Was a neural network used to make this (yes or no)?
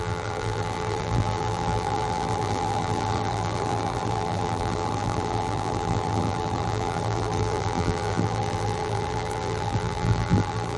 yes